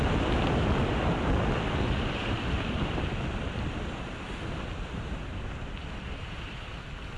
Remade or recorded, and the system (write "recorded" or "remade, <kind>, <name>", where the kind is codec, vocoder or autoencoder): recorded